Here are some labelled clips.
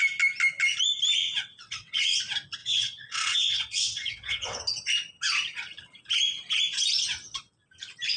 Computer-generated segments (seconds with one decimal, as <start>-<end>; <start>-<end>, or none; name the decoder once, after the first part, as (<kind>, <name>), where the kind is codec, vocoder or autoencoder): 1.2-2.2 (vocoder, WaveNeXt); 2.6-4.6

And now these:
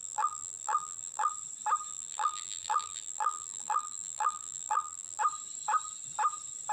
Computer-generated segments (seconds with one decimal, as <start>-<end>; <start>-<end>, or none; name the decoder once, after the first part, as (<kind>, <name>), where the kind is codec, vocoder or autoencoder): 0.0-1.3 (vocoder, BigVGAN v2); 1.9-5.2

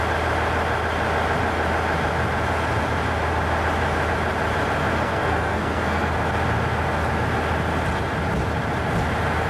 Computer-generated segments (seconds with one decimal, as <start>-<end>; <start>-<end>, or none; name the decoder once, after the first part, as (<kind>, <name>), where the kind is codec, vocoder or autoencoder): 5.0-6.1 (codec, SNAC)

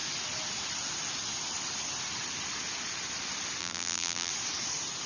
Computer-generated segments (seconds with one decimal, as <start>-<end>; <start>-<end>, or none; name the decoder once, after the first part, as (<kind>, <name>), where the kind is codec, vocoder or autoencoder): 3.6-4.3 (vocoder, BigVGAN v2)

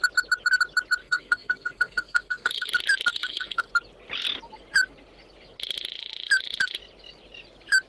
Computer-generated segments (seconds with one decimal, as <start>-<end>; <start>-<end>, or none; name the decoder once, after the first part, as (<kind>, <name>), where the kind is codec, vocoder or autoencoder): 1.0-2.7 (codec, SNAC); 3.1-3.7